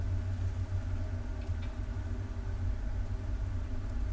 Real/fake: real